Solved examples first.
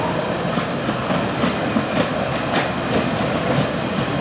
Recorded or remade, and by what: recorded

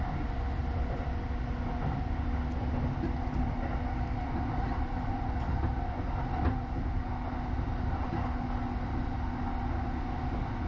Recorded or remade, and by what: recorded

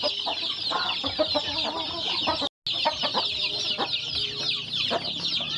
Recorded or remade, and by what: recorded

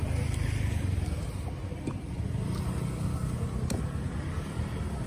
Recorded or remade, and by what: recorded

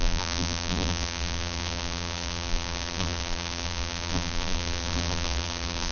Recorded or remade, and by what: remade, vocoder, BigVGAN v2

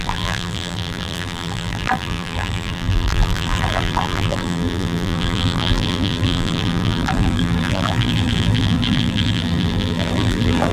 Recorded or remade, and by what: remade, vocoder, BigVGAN v2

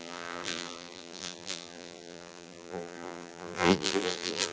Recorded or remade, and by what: remade, vocoder, BigVGAN v2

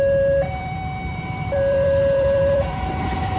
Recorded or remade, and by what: remade, vocoder, BigVGAN v2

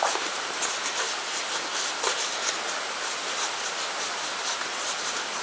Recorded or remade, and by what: recorded